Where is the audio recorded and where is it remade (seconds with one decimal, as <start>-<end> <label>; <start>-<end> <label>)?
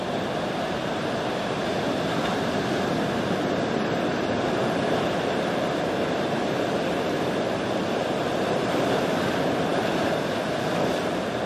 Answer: 0.0-1.7 remade; 1.7-4.5 recorded; 4.5-9.7 remade; 9.7-11.5 recorded